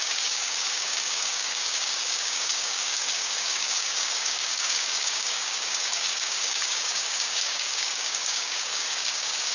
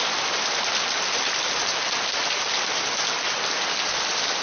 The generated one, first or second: first